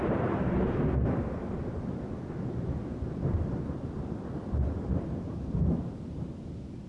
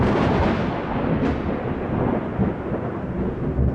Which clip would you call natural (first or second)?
second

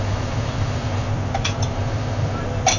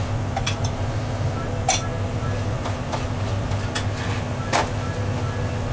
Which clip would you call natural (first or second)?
second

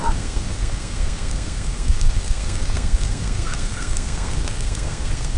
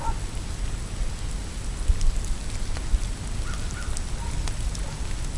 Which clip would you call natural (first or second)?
second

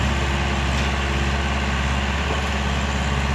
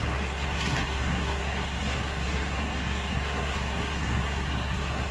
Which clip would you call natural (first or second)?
first